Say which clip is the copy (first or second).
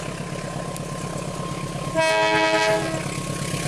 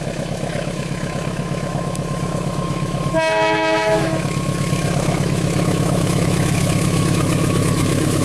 second